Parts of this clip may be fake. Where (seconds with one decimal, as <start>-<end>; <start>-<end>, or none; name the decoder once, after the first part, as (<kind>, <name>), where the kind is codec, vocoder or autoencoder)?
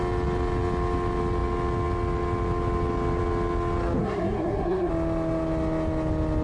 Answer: 4.0-4.9 (codec, SNAC)